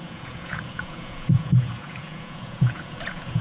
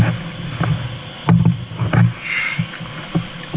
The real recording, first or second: second